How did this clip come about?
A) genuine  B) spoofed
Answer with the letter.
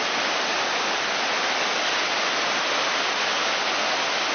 A